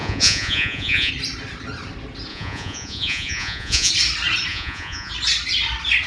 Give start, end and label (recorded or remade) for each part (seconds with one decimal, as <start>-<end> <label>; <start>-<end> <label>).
0.0-1.1 remade; 1.1-2.3 recorded; 2.3-3.9 remade; 3.9-4.5 recorded; 4.5-5.1 remade; 5.1-6.1 recorded